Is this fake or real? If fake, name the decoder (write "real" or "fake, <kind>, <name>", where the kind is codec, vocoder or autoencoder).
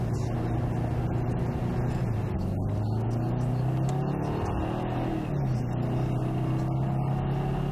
real